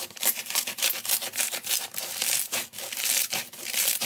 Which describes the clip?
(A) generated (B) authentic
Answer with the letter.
A